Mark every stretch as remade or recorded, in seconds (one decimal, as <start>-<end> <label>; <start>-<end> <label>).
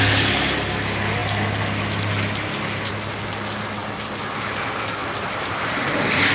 0.0-5.0 recorded; 5.0-6.3 remade